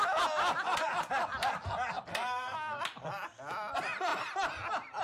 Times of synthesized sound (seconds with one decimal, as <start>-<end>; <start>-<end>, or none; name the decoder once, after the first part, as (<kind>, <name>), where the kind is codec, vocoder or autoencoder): 2.1-2.8 (codec, SNAC)